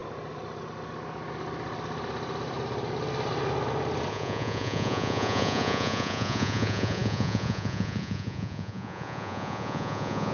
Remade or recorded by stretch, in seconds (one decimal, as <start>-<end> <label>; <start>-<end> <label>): 0.0-4.1 recorded; 4.1-10.3 remade